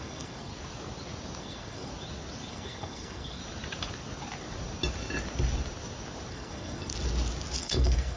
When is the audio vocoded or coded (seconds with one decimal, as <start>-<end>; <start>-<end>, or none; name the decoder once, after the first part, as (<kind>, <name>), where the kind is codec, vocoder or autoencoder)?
0.0-0.5 (codec, SNAC); 1.4-1.9; 2.5-3.4; 6.3-6.9; 7.6-8.2